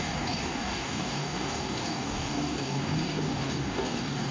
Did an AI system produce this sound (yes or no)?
yes